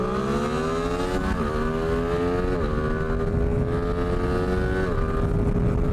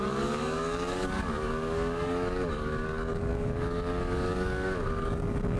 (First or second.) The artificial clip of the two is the second